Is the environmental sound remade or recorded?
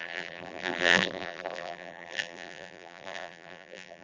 remade